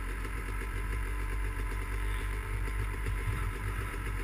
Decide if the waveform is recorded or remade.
remade